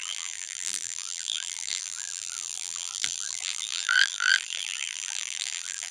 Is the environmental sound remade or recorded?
remade